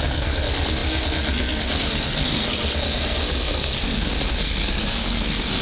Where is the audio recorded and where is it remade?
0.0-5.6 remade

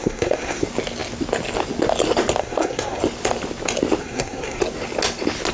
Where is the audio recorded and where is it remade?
0.0-0.6 remade; 0.6-2.4 recorded; 2.4-3.0 remade; 3.0-4.0 recorded; 4.0-4.6 remade; 4.6-5.5 recorded

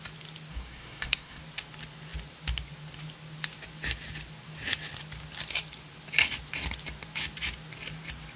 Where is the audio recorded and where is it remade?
0.0-0.5 recorded; 0.5-1.4 remade; 1.4-8.4 recorded

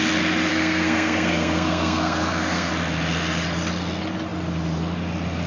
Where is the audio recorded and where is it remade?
0.0-0.5 recorded; 0.5-2.7 remade; 2.7-5.5 recorded

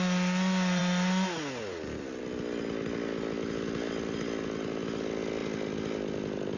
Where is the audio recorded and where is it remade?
0.0-6.6 recorded

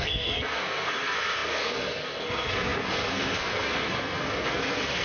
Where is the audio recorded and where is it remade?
0.0-5.0 remade